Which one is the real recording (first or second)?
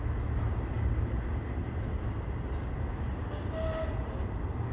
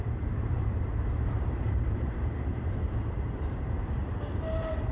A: first